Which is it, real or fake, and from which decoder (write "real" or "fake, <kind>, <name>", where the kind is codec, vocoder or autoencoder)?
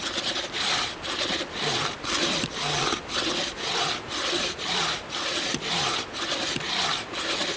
real